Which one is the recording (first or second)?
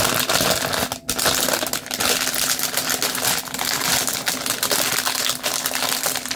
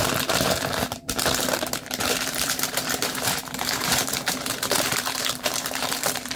first